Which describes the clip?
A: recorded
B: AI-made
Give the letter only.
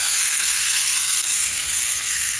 B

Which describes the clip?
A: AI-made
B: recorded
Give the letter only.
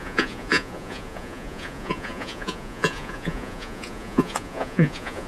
A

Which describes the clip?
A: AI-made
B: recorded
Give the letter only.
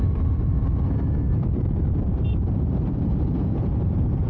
A